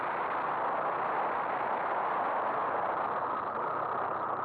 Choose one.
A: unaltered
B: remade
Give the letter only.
A